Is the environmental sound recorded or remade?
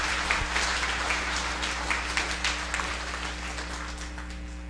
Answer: recorded